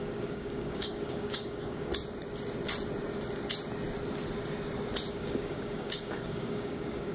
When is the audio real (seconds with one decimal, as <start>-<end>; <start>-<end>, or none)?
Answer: 1.9-5.1